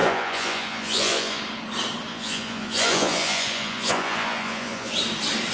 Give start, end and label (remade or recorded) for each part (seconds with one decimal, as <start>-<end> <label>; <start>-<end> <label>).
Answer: 0.0-1.4 remade; 1.4-2.1 recorded; 2.1-4.9 remade; 4.9-5.5 recorded